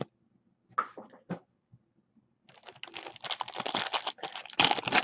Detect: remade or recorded recorded